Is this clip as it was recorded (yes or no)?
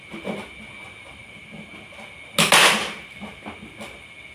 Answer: yes